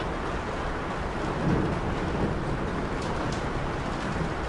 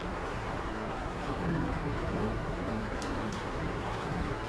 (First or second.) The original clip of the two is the first